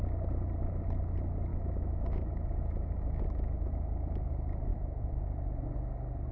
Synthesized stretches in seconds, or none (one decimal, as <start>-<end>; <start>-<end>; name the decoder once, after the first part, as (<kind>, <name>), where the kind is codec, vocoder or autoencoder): 1.5-4.3 (autoencoder, DAC-VAE); 4.7-5.2